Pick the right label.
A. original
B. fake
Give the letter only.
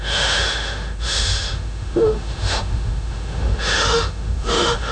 B